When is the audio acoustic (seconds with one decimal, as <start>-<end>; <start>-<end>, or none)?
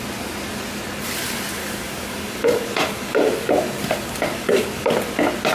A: 0.0-1.6; 4.9-5.5